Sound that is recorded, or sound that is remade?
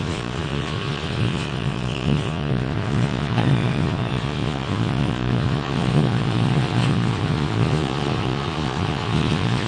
remade